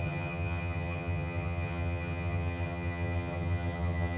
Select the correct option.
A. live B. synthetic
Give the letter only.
B